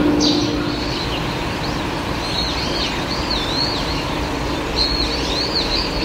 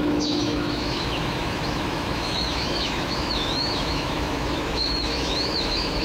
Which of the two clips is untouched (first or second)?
first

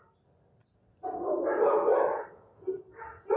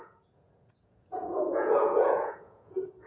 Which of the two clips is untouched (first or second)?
first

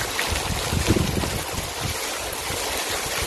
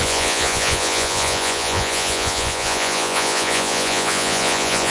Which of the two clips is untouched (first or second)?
first